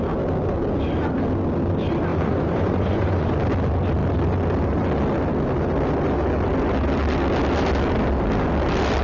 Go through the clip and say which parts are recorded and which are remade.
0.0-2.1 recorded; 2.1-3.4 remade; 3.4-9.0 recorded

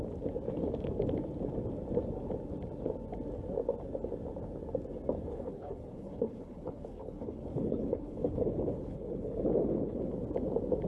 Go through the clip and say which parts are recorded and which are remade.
0.0-5.3 recorded; 5.3-10.1 remade; 10.1-10.9 recorded

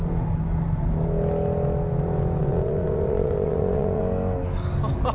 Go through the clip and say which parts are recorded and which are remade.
0.0-2.4 recorded; 2.4-4.0 remade; 4.0-5.1 recorded

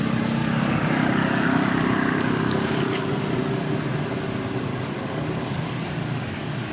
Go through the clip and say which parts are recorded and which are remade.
0.0-0.4 recorded; 0.4-3.7 remade; 3.7-4.7 recorded; 4.7-6.7 remade

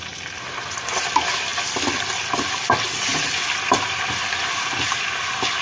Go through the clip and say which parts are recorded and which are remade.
0.0-5.6 recorded

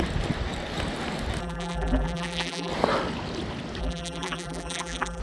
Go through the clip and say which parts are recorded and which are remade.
0.0-1.4 recorded; 1.4-2.7 remade; 2.7-3.8 recorded; 3.8-5.2 remade